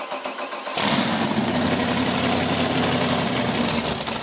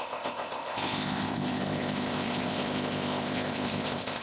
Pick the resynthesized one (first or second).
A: second